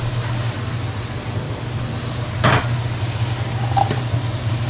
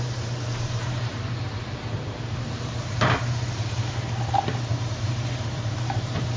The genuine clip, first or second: first